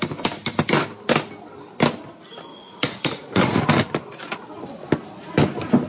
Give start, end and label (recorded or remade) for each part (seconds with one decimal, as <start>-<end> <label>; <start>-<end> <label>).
0.0-2.5 recorded; 2.5-3.6 remade; 3.6-5.9 recorded